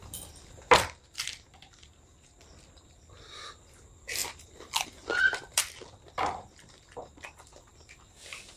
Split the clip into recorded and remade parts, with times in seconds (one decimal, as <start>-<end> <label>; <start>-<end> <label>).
0.0-8.6 recorded